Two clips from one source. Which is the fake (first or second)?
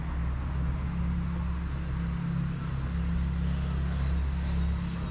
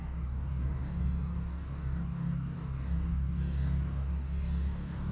second